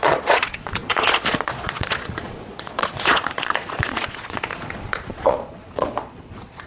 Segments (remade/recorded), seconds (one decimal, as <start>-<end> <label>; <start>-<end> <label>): 0.0-6.7 remade